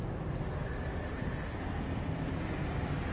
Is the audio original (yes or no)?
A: yes